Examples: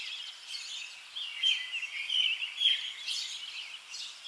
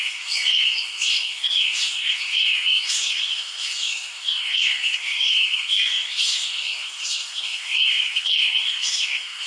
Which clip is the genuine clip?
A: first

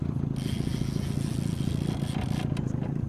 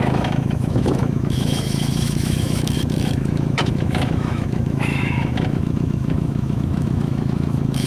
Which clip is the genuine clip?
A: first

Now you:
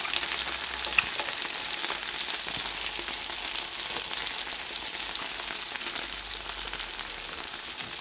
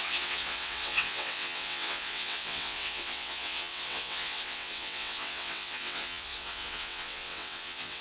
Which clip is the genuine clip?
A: first